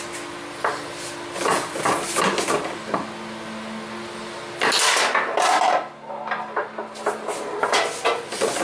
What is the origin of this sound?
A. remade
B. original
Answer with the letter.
B